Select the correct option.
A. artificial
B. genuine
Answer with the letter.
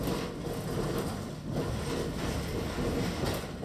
B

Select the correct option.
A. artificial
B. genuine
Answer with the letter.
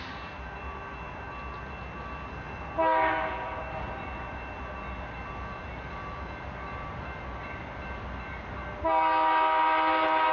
B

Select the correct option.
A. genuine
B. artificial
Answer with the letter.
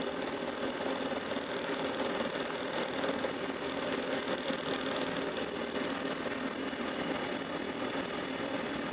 A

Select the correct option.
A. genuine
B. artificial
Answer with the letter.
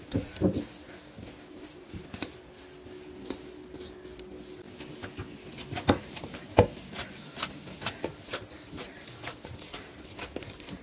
A